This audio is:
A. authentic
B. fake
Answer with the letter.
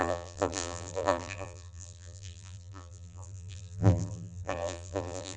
B